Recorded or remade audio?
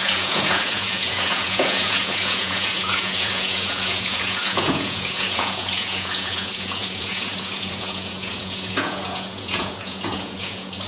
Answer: remade